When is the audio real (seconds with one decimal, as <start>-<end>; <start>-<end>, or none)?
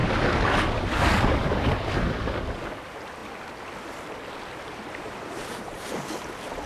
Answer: 2.8-6.7